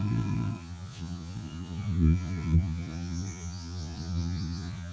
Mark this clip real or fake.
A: fake